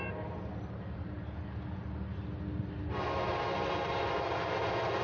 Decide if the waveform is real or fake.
real